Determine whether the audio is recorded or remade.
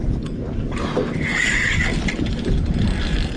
recorded